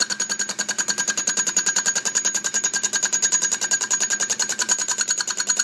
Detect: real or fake fake